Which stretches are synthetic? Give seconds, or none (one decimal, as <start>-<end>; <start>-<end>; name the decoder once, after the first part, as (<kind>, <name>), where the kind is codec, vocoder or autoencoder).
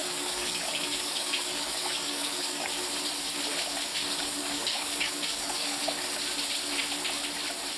0.0-2.7 (codec, DAC); 3.9-5.8